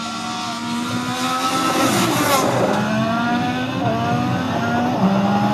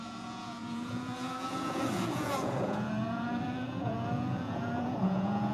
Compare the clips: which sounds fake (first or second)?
second